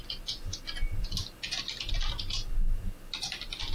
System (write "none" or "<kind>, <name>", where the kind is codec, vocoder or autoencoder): none